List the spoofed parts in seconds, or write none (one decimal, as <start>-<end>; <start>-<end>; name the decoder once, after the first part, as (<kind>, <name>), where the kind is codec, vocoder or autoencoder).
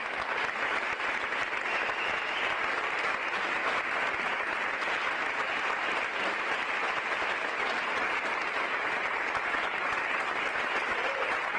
none